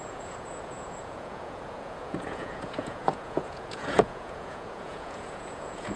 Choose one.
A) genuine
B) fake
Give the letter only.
B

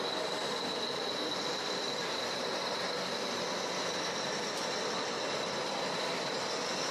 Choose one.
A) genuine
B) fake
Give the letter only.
A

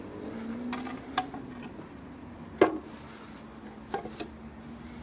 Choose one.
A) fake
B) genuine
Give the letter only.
B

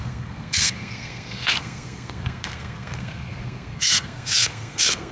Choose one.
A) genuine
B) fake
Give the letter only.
B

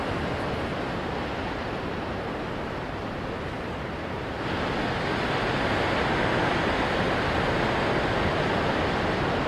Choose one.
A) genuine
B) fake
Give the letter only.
A